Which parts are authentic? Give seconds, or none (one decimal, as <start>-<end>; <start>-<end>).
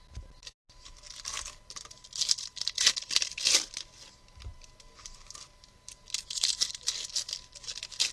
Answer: 0.0-8.1